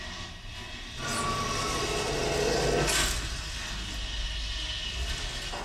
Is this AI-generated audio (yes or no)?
no